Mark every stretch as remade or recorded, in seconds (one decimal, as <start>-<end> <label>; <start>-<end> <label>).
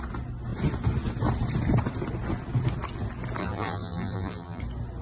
0.0-3.4 recorded; 3.4-4.6 remade; 4.6-5.0 recorded